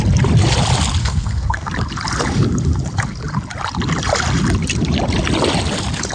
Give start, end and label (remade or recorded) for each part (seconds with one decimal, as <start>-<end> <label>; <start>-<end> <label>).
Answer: 0.0-1.0 recorded; 1.0-1.7 remade; 1.7-6.1 recorded